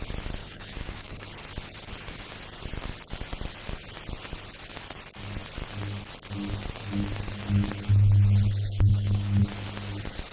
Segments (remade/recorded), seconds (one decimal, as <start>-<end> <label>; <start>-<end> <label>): 0.0-0.4 recorded; 0.4-1.3 remade; 1.3-8.9 recorded; 8.9-9.4 remade; 9.4-10.3 recorded